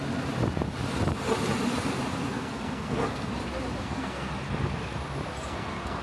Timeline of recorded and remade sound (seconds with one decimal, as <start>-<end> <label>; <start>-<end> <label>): 0.0-2.3 recorded; 2.3-3.3 remade; 3.3-3.8 recorded; 3.8-4.3 remade; 4.3-5.4 recorded; 5.4-6.0 remade